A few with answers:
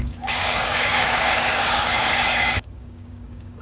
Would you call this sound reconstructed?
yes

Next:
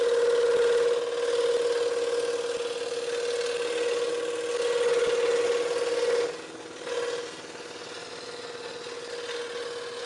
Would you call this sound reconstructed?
no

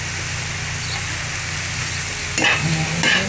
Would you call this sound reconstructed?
no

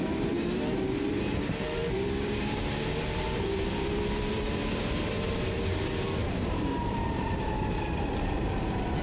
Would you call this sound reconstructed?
yes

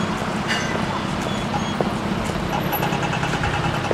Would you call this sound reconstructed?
no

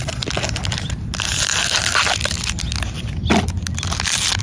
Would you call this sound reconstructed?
no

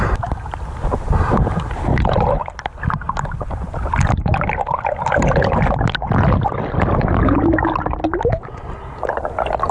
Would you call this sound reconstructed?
no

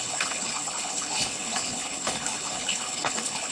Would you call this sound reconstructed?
yes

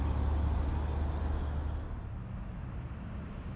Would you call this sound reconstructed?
no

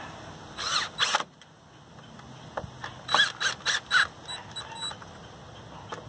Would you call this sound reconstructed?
no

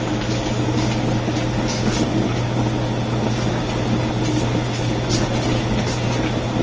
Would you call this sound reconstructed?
no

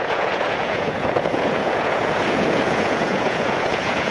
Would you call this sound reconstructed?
yes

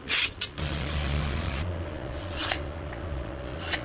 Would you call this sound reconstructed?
yes